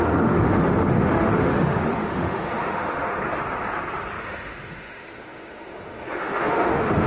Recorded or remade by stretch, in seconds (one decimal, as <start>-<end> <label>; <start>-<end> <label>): 0.0-3.2 remade; 3.2-4.2 recorded; 4.2-7.1 remade